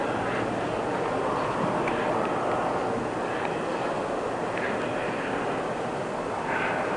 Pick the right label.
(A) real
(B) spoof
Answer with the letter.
A